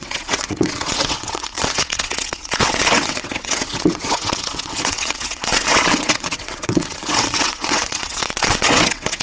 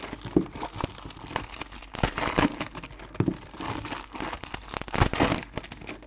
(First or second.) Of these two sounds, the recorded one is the second